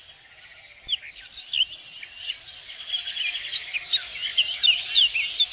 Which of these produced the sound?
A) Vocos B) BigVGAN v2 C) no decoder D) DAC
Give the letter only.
C